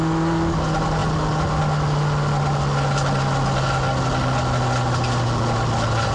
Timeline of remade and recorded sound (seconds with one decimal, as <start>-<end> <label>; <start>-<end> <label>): 0.0-6.1 recorded